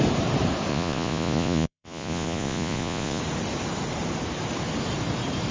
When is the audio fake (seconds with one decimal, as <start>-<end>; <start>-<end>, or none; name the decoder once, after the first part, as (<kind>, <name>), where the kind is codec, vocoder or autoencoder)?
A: 0.7-3.2 (vocoder, Vocos)